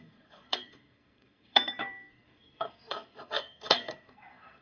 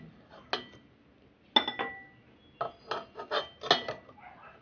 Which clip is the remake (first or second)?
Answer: first